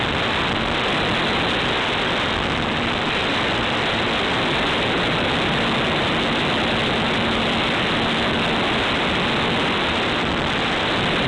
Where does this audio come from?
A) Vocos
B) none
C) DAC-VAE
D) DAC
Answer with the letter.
B